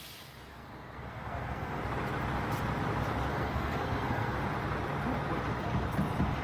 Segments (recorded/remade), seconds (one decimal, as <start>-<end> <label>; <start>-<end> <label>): 0.0-0.5 recorded; 0.5-1.8 remade; 1.8-3.3 recorded; 3.3-4.4 remade; 4.4-6.4 recorded